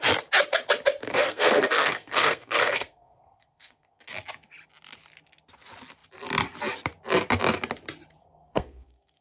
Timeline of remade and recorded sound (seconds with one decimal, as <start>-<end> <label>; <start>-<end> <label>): 0.0-1.1 recorded; 1.1-4.0 remade; 4.0-8.2 recorded; 8.2-9.2 remade